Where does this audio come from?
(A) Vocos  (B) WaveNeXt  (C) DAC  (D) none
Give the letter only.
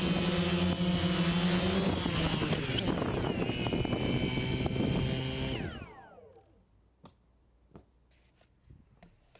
D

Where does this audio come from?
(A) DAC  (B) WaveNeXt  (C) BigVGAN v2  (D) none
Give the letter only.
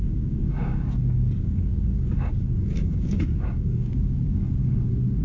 A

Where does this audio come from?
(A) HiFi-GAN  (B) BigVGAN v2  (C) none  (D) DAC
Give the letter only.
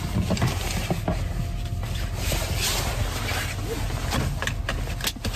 C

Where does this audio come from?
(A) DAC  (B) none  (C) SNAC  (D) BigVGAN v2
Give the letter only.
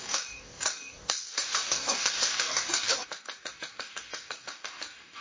A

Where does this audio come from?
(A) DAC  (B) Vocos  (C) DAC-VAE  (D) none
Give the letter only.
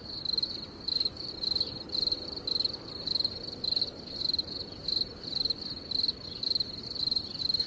D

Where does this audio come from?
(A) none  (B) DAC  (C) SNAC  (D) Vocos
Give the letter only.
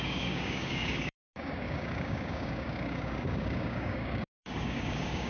B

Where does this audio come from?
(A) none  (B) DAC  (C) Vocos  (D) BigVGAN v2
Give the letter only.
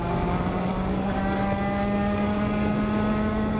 B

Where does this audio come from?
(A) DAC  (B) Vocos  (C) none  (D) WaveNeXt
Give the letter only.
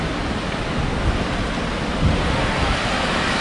C